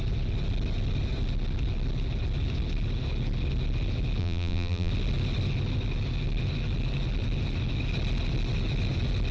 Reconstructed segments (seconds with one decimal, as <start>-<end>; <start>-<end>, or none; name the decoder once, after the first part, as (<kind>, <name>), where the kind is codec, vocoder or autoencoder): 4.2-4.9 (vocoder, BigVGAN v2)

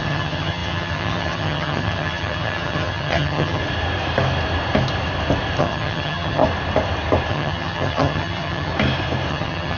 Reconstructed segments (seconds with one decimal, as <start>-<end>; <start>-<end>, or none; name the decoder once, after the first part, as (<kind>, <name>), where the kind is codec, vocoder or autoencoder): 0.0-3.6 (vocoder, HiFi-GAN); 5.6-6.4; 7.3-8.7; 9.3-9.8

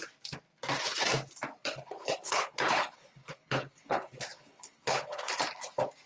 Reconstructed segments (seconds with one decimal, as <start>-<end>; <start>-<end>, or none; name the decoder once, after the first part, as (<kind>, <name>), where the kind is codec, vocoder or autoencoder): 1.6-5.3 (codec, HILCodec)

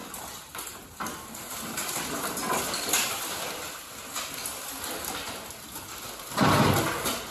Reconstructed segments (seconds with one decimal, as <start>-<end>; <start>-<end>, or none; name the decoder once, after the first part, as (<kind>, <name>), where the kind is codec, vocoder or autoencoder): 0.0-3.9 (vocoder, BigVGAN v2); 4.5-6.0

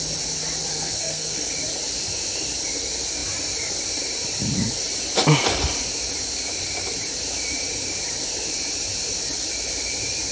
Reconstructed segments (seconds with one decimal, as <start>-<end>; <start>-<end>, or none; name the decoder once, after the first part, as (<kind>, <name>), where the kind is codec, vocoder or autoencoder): 0.7-1.5 (codec, SNAC)

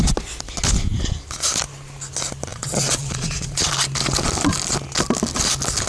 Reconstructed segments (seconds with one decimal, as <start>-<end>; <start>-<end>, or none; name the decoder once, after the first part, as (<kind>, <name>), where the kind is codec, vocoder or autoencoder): 2.5-3.7 (vocoder, Vocos)

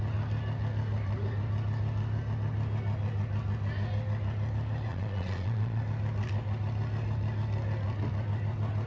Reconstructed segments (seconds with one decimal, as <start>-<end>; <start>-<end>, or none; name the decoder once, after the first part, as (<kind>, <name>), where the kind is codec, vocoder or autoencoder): 4.9-5.8 (vocoder, Vocos)